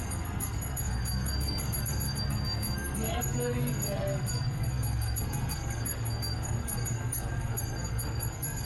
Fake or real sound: fake